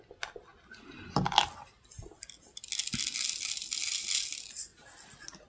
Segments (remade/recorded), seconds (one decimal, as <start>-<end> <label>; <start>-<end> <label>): 0.0-5.5 recorded